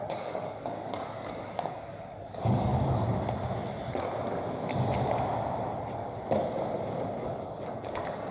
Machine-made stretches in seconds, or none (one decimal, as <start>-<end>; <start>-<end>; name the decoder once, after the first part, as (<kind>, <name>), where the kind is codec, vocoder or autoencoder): 0.0-2.7 (codec, DAC); 7.2-8.3